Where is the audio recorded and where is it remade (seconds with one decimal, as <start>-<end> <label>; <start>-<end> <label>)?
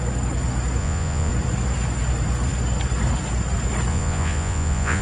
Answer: 0.0-0.8 recorded; 0.8-1.3 remade; 1.3-3.9 recorded; 3.9-5.0 remade